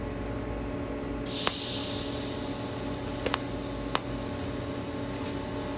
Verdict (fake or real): real